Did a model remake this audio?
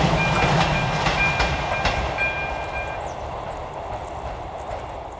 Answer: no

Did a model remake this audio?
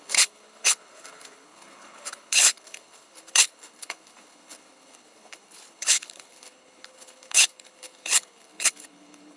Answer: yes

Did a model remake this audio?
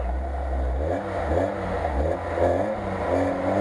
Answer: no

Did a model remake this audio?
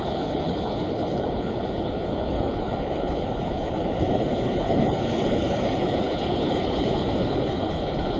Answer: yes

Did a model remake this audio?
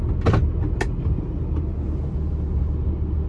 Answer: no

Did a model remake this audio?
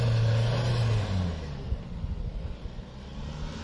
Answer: no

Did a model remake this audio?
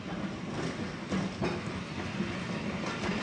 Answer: no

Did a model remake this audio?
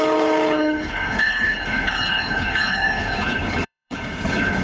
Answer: yes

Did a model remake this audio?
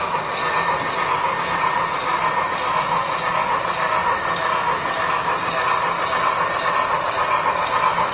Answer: no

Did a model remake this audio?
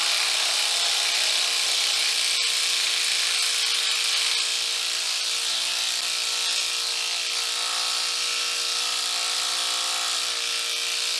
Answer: no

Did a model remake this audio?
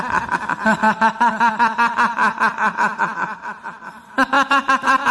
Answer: no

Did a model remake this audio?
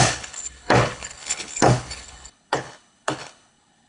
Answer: yes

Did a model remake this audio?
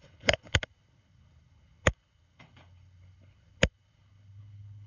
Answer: yes